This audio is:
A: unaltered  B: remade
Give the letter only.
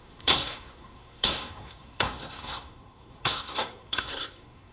B